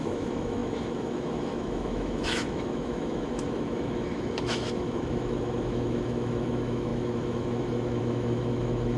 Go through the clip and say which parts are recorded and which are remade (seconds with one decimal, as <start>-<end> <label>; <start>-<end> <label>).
0.0-9.0 remade